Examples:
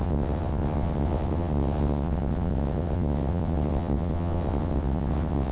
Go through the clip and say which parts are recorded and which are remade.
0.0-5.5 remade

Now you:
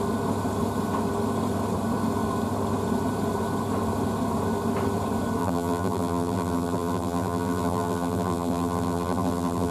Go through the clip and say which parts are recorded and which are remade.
0.0-5.4 recorded; 5.4-9.7 remade

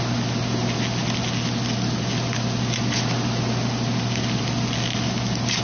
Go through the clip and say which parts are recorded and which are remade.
0.0-5.6 recorded